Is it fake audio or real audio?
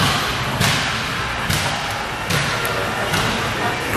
real